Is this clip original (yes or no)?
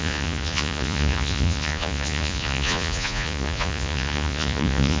no